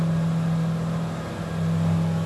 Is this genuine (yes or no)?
yes